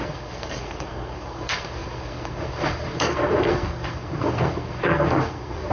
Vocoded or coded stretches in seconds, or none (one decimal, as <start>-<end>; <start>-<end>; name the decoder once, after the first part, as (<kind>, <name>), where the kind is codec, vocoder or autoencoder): 0.0-5.7 (codec, SNAC)